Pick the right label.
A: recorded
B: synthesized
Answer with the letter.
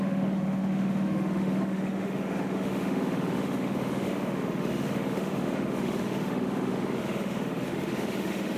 B